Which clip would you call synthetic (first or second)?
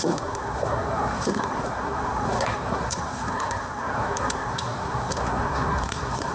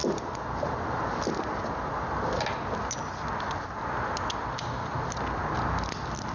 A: first